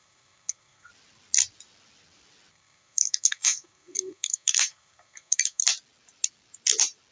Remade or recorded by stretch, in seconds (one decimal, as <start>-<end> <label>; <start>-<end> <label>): 0.0-0.9 remade; 0.9-2.5 recorded; 2.5-5.6 remade; 5.6-7.1 recorded